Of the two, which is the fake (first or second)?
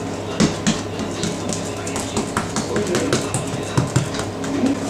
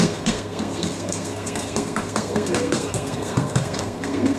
second